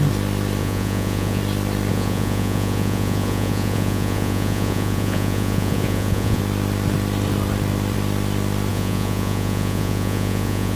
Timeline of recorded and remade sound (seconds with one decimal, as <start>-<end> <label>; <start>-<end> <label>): 0.0-0.6 recorded; 0.6-1.4 remade; 1.4-1.9 recorded; 1.9-6.4 remade; 6.4-8.7 recorded; 8.7-10.8 remade